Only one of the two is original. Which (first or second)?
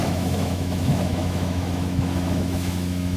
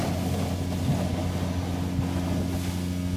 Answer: second